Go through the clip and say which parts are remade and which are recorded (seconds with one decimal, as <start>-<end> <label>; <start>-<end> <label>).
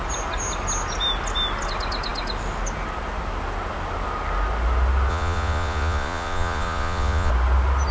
0.0-5.1 recorded; 5.1-7.3 remade; 7.3-7.9 recorded